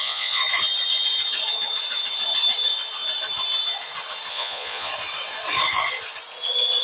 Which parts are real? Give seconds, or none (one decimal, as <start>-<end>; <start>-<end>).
0.4-4.3; 4.9-6.8